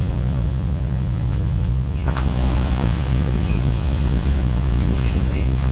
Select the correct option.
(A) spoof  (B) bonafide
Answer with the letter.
A